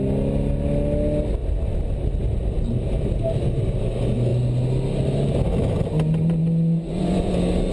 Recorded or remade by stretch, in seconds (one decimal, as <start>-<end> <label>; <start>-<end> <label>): 0.0-6.4 recorded; 6.4-7.3 remade; 7.3-7.7 recorded